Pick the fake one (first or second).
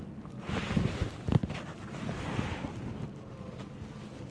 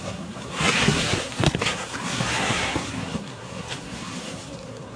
second